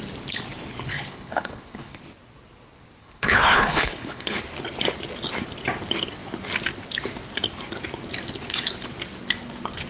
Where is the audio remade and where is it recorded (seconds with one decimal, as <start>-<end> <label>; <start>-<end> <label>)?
0.0-0.9 recorded; 0.9-2.0 remade; 2.0-3.0 recorded; 3.0-4.4 remade; 4.4-9.9 recorded